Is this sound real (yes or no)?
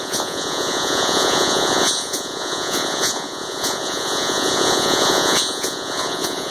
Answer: no